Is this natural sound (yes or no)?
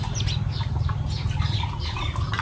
yes